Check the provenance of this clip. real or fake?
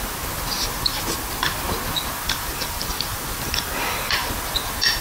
real